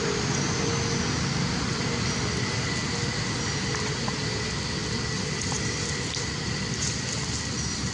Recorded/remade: recorded